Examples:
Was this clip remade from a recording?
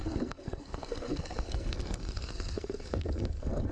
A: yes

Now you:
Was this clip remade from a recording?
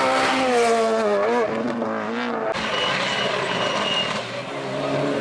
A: no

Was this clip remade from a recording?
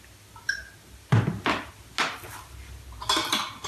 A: no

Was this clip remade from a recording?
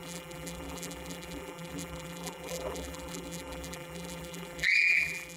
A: yes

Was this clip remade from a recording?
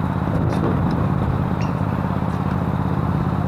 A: no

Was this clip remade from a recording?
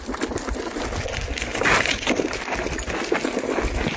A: no